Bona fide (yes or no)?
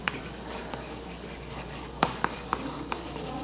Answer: no